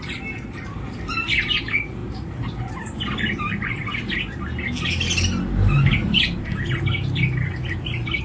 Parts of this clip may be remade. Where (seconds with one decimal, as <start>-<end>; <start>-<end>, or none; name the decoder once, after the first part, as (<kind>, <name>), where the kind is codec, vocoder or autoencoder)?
none